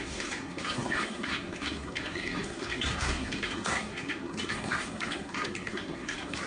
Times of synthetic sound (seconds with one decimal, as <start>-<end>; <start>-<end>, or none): 0.0-6.5